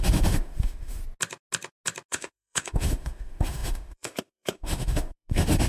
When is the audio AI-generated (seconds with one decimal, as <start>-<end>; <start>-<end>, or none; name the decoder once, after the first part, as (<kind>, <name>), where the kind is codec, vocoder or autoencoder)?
0.0-1.0 (autoencoder, DAC-VAE); 2.1-5.7